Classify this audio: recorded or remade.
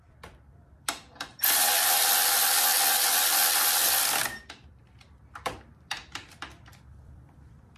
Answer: remade